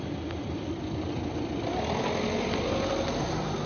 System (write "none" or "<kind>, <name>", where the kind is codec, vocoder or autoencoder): none